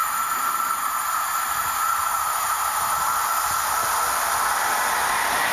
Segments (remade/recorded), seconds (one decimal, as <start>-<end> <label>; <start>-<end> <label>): 0.0-3.3 remade; 3.3-5.5 recorded